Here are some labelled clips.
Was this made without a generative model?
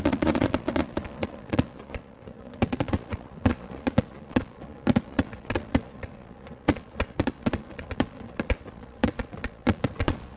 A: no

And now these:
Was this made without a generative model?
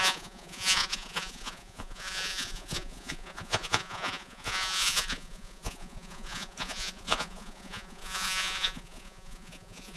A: no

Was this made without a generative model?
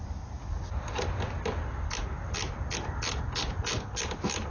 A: yes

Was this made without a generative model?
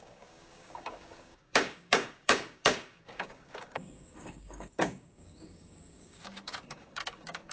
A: no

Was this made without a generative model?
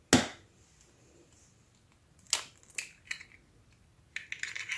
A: yes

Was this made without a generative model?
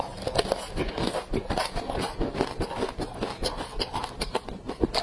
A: yes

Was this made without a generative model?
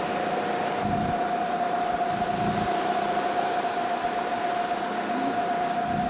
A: yes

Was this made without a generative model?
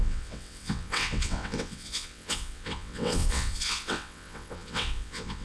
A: no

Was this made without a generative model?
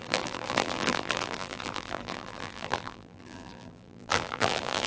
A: no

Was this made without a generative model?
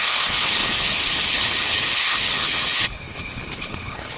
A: no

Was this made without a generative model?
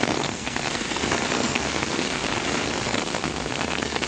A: no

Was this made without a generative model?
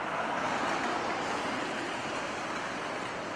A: yes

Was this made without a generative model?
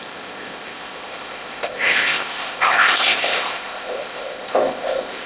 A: no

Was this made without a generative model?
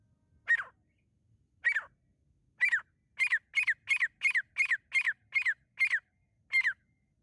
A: yes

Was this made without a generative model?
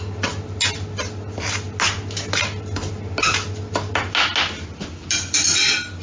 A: yes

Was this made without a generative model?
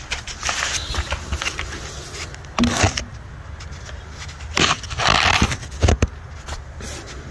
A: yes